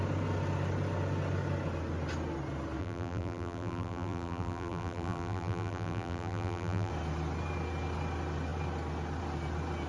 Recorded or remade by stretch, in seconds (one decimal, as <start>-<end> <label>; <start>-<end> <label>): 0.0-2.8 recorded; 2.8-6.9 remade; 6.9-9.9 recorded